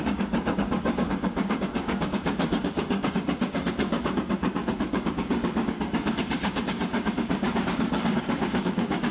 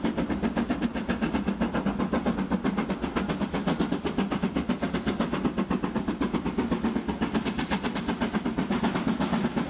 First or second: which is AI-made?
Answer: first